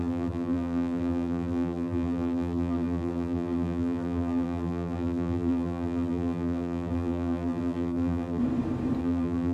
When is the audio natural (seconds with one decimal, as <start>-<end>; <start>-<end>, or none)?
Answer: 8.4-9.0